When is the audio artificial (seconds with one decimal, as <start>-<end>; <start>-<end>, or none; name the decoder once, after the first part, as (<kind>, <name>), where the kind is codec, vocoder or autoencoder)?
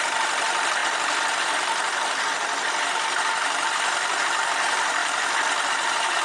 0.8-2.1 (vocoder, BigVGAN v2); 5.0-5.7